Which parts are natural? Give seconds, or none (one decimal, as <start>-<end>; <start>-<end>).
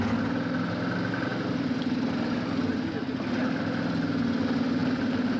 0.0-5.4